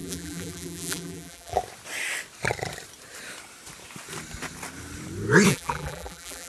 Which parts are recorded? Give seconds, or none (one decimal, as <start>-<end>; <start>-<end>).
1.6-5.5